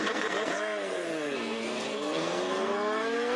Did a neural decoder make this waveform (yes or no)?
yes